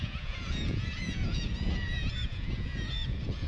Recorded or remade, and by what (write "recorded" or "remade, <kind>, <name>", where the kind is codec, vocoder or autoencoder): remade, vocoder, Vocos